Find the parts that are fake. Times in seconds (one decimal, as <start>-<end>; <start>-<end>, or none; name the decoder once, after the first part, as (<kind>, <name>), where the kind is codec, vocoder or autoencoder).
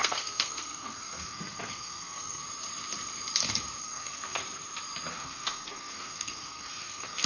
0.0-2.4 (codec, SNAC); 3.8-4.4; 5.1-7.3